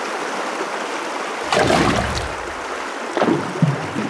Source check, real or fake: real